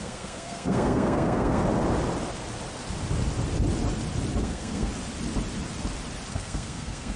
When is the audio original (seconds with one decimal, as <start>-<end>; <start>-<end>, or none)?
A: 1.6-4.4; 4.9-6.3